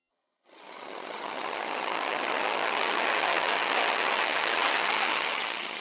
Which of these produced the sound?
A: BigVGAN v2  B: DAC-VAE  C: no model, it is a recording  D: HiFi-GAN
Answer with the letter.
D